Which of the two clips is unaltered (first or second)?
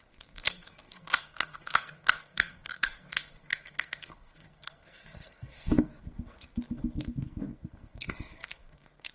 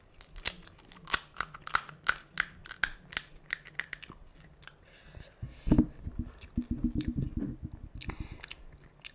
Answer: second